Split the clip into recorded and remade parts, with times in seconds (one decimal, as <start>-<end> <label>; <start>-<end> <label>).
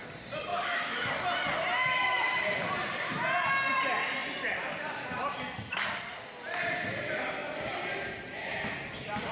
0.0-0.5 recorded; 0.5-1.1 remade; 1.1-9.3 recorded